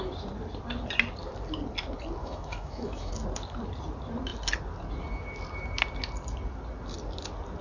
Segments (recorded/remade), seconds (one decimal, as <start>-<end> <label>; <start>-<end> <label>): 0.0-2.2 recorded; 2.2-3.1 remade; 3.1-7.6 recorded